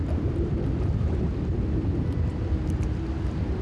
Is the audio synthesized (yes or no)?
no